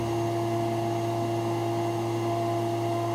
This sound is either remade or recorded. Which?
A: recorded